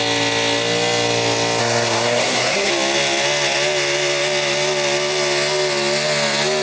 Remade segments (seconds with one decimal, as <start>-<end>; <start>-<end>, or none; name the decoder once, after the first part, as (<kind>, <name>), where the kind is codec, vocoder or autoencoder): 1.6-2.7 (codec, SNAC)

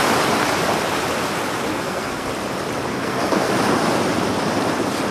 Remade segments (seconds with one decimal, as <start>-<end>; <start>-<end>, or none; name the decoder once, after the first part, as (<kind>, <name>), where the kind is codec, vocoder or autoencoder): 1.7-2.3 (codec, SNAC); 2.9-3.5

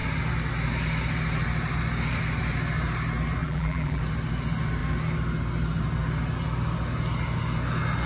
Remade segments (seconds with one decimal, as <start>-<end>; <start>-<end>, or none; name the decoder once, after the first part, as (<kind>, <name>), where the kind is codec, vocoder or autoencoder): 3.4-4.0 (vocoder, BigVGAN v2)

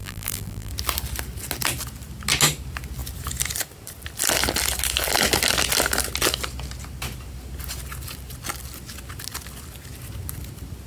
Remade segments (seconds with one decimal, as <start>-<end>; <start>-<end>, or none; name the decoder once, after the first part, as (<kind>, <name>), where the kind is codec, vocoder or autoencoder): 0.0-0.7 (vocoder, BigVGAN v2)

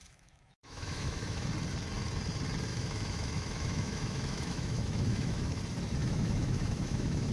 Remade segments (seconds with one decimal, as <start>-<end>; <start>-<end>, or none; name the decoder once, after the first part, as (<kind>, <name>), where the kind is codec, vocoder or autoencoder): 0.0-1.5 (autoencoder, DAC-VAE); 2.7-5.6; 6.0-7.3